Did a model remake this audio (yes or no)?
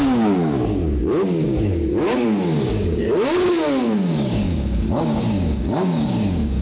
yes